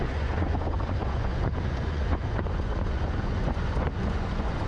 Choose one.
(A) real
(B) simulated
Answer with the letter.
B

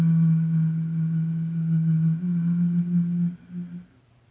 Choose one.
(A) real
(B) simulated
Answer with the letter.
A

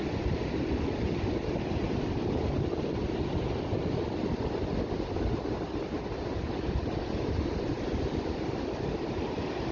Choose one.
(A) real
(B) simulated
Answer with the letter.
A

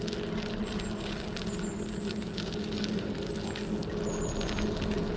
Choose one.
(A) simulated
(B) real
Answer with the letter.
B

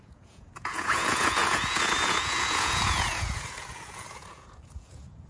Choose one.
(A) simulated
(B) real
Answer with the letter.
A